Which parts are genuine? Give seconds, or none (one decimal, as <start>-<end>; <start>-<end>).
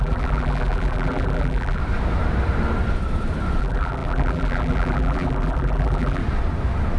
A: 1.8-3.6; 6.2-7.0